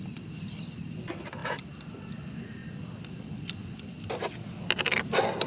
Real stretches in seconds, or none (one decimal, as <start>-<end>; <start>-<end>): 0.0-5.5